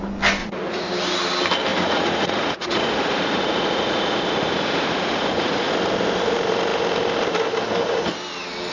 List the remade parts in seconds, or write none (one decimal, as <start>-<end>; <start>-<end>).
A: 0.4-0.9; 1.7-5.7

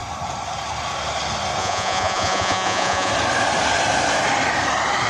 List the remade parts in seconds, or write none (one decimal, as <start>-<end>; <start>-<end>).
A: 1.6-3.1

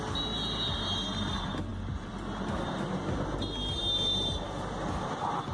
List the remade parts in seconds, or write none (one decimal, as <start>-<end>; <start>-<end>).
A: none

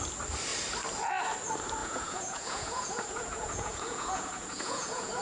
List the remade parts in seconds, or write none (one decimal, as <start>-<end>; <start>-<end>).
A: 1.8-5.2

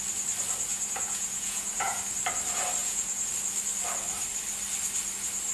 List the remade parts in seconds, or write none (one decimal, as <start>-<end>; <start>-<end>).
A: 0.7-2.0; 2.8-3.3

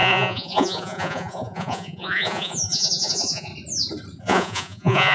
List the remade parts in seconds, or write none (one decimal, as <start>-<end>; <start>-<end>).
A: 0.0-3.5; 4.2-5.1

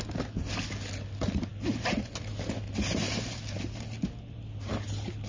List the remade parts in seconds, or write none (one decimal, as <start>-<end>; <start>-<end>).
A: none